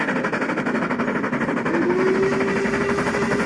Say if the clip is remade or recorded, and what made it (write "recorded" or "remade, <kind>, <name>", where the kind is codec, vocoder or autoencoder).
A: recorded